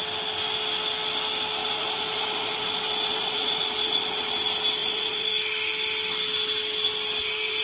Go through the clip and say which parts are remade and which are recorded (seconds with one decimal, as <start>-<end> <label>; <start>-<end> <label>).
0.0-1.6 recorded; 1.6-4.3 remade; 4.3-4.8 recorded; 4.8-5.3 remade; 5.3-7.6 recorded